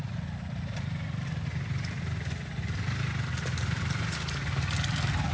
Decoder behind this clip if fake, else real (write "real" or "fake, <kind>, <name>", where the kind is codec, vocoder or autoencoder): real